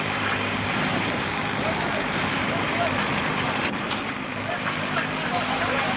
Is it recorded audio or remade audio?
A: remade